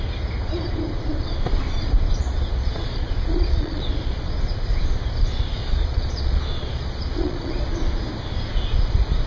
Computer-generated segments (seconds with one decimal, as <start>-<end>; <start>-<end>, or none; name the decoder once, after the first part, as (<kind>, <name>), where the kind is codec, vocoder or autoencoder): 2.2-4.4 (vocoder, Vocos); 5.6-7.6